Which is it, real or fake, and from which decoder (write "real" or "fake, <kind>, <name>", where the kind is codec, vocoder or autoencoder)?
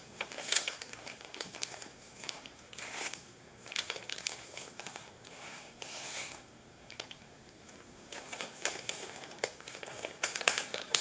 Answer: fake, codec, SNAC